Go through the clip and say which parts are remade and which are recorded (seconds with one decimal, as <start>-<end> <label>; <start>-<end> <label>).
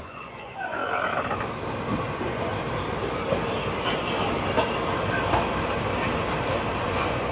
0.0-0.8 remade; 0.8-2.1 recorded; 2.1-2.5 remade; 2.5-6.8 recorded; 6.8-7.3 remade